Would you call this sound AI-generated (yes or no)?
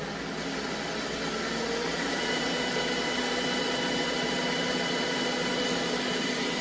no